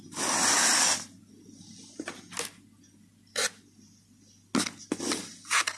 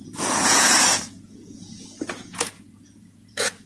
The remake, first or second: second